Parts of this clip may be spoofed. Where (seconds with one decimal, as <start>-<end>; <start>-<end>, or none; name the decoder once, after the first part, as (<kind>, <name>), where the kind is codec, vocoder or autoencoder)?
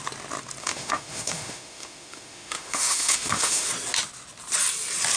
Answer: 0.6-3.7 (autoencoder, DAC-VAE)